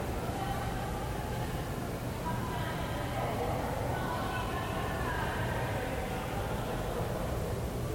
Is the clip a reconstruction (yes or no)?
yes